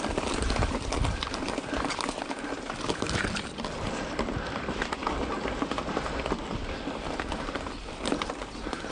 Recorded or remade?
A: recorded